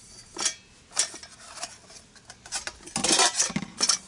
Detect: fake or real real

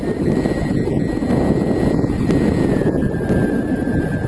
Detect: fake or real real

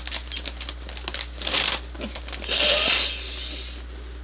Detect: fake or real real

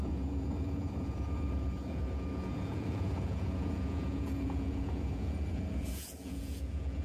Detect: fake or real fake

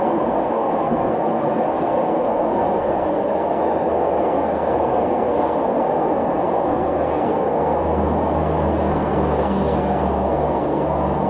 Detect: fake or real fake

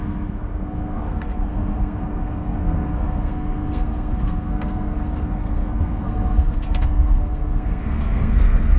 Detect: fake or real fake